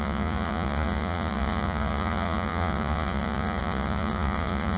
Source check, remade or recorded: remade